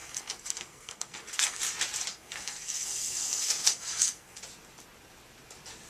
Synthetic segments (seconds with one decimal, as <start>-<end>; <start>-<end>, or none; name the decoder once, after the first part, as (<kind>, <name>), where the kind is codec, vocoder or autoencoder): 0.0-1.6 (codec, SNAC); 2.1-4.4